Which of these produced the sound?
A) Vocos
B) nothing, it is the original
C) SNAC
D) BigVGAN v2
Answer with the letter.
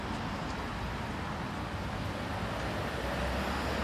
B